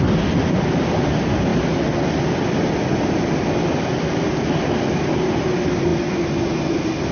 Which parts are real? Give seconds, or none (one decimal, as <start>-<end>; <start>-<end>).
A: 0.0-7.1